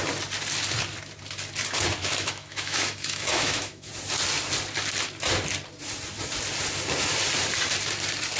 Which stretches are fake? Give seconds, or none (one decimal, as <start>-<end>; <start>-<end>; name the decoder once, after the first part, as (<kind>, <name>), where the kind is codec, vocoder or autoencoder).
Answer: 2.0-3.9 (autoencoder, DAC-VAE)